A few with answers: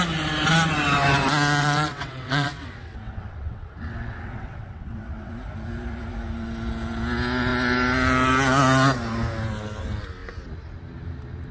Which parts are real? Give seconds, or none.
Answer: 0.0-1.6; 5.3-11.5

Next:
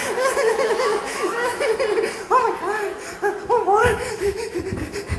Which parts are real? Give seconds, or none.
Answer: 1.7-3.8; 4.6-5.2

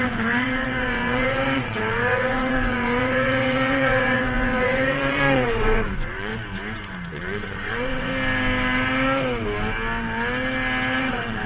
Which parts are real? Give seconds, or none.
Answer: 6.3-7.1; 8.1-11.0

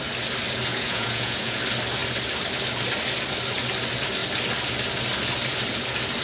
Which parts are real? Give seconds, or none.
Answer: 0.0-0.7; 1.6-6.2

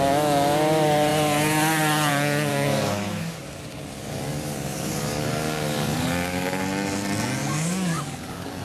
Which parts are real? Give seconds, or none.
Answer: 0.0-2.5; 6.6-7.4

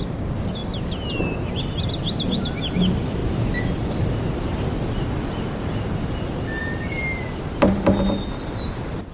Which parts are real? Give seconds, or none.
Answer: 0.0-9.1

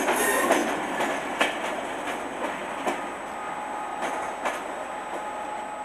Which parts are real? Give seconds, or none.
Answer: 0.0-5.8